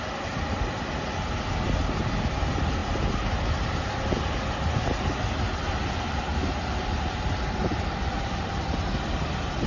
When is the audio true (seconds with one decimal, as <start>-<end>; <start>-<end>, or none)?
0.0-6.3; 8.9-9.7